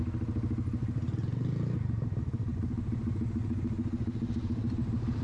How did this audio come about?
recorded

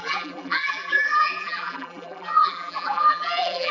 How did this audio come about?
remade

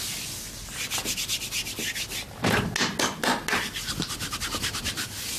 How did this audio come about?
recorded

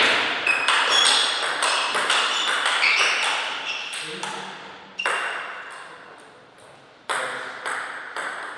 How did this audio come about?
recorded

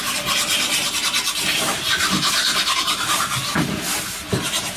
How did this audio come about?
remade